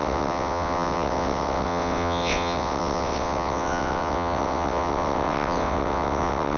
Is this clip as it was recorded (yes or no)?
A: no